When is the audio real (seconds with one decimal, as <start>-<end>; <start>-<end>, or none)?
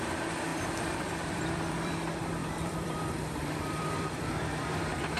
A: 0.0-0.5; 1.9-2.4; 4.8-5.2